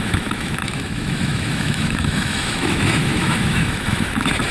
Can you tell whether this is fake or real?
fake